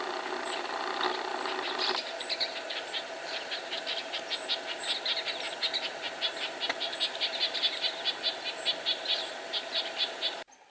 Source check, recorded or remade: recorded